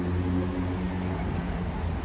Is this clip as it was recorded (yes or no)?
yes